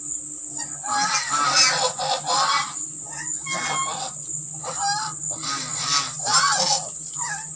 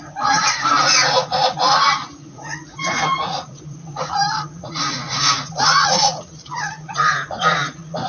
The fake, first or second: second